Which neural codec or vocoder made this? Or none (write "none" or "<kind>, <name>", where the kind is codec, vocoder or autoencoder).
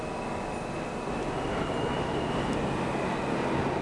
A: none